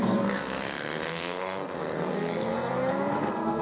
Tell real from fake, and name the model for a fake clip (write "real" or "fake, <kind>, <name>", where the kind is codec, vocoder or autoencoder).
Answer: fake, codec, SNAC